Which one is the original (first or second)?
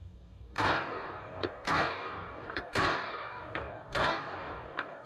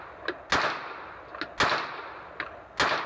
second